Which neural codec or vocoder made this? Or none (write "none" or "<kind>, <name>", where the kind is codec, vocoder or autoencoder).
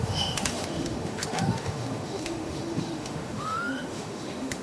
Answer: autoencoder, DAC-VAE